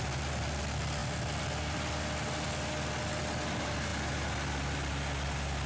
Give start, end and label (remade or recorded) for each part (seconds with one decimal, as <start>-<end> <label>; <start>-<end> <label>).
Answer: 0.0-5.7 recorded